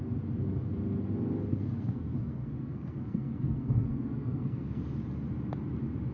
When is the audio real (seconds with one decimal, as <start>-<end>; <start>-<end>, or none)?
0.0-1.5; 4.8-6.1